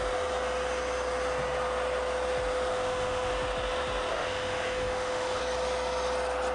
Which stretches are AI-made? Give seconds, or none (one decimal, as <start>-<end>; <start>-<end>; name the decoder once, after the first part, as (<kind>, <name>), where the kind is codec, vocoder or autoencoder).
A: 2.7-3.3 (autoencoder, DAC-VAE); 4.1-5.4